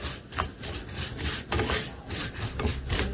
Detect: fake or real real